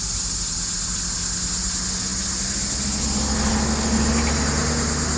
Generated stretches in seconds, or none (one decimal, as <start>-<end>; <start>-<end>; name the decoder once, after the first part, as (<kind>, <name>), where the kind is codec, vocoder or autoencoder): none

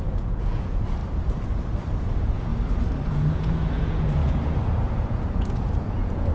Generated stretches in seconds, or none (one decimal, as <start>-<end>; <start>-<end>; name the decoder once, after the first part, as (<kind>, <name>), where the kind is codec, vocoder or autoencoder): 0.0-1.0 (vocoder, Vocos); 2.0-2.5; 3.1-6.3